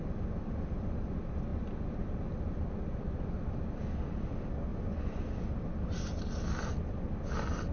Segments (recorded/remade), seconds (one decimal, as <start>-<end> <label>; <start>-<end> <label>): 0.0-4.7 recorded; 4.7-5.2 remade; 5.2-7.7 recorded